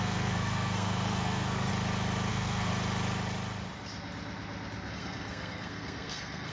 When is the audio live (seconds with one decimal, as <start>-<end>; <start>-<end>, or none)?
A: 1.7-2.3; 2.7-4.9